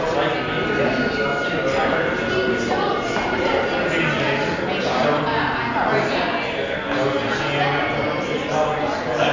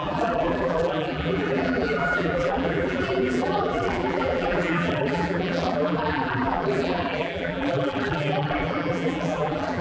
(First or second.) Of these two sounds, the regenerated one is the second